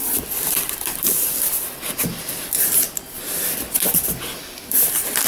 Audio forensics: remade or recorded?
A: recorded